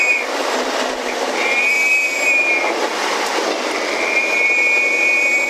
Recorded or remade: remade